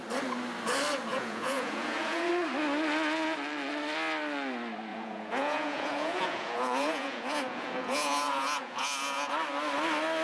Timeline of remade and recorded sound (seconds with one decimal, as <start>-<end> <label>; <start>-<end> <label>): 0.0-1.1 recorded; 1.1-2.3 remade; 2.3-4.9 recorded; 4.9-9.3 remade; 9.3-10.2 recorded